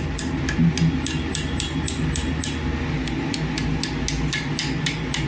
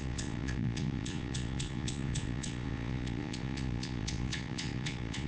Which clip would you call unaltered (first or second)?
first